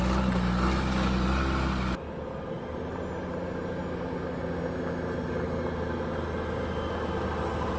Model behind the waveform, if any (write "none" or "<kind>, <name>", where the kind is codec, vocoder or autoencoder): none